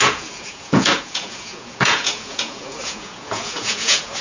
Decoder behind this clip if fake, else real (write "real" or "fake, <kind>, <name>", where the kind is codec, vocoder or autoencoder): fake, vocoder, Vocos